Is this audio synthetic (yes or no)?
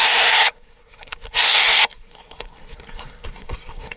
yes